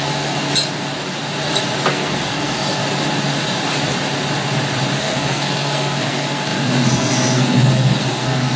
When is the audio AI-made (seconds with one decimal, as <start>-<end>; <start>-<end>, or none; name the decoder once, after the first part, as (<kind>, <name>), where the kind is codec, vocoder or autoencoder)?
0.0-0.5 (codec, SNAC); 1.9-2.8; 5.0-8.6